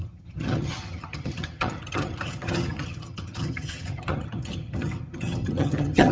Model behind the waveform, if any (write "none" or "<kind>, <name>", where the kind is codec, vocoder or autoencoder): vocoder, HiFi-GAN